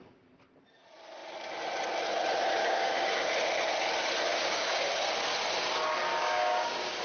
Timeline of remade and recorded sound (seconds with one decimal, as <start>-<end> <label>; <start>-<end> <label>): 0.0-2.6 recorded; 2.6-3.3 remade; 3.3-4.3 recorded; 4.3-4.9 remade; 4.9-6.1 recorded; 6.1-7.0 remade